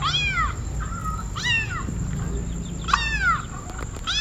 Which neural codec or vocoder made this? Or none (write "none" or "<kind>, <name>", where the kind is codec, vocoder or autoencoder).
none